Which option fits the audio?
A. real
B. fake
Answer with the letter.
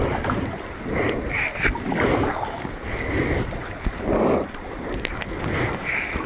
A